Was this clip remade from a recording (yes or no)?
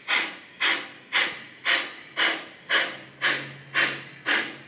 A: no